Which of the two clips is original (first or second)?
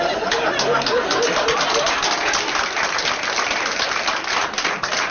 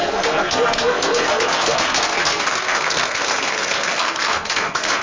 first